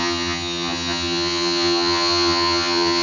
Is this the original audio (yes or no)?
no